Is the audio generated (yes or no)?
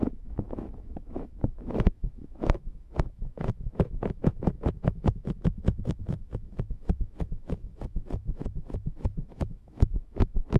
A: yes